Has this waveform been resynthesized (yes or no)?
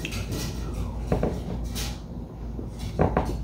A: no